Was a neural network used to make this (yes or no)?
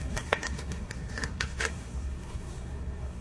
yes